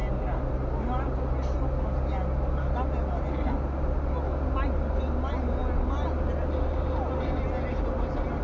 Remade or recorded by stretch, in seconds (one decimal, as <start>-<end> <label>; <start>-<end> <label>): 0.0-8.4 recorded